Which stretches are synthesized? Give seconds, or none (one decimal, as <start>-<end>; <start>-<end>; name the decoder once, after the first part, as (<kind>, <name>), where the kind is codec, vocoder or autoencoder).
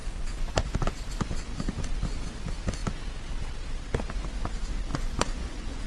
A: 0.0-0.8 (vocoder, Vocos); 4.9-5.9